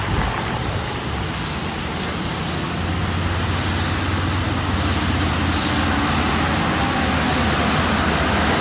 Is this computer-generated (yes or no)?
no